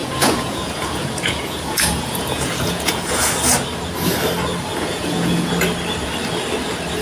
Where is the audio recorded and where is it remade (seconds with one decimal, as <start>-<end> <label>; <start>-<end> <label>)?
0.0-3.3 remade; 3.3-4.7 recorded; 4.7-5.5 remade; 5.5-7.0 recorded